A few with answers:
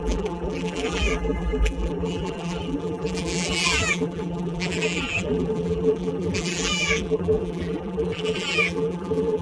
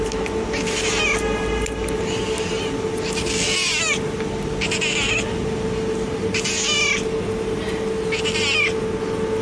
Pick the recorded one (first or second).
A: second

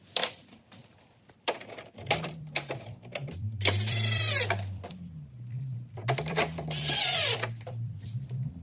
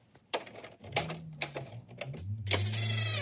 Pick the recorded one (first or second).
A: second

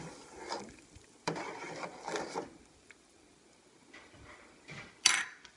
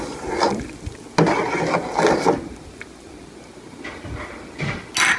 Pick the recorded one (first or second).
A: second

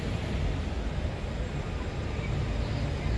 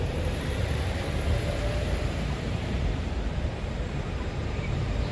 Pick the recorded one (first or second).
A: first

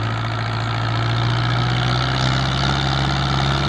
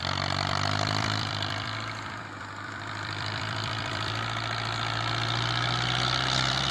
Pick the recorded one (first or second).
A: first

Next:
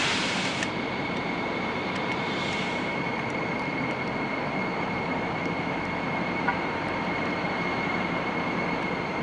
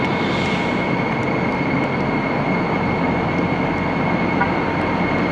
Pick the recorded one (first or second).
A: second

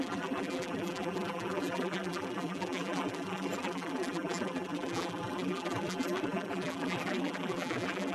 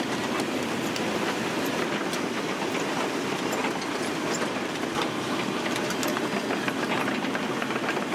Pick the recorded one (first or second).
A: second